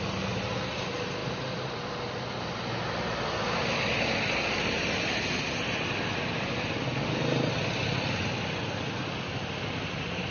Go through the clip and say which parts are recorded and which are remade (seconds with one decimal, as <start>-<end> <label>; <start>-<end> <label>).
0.0-1.2 recorded; 1.2-1.9 remade; 1.9-10.3 recorded